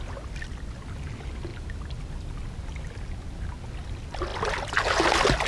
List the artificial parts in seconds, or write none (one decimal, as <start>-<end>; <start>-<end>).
none